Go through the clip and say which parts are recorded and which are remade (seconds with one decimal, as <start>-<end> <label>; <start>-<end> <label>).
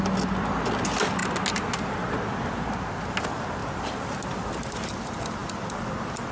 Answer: 0.0-6.3 recorded